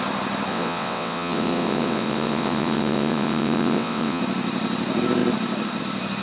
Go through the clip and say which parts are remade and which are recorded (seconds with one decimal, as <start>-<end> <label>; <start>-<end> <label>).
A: 0.0-0.5 recorded; 0.5-4.2 remade; 4.2-6.2 recorded